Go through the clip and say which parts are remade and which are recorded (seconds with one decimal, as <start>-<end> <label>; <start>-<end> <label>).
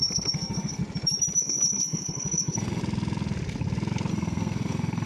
0.0-0.8 remade; 0.8-1.4 recorded; 1.4-2.8 remade; 2.8-4.1 recorded; 4.1-5.1 remade